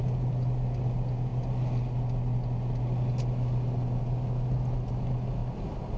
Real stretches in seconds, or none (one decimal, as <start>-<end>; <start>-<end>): 0.0-6.0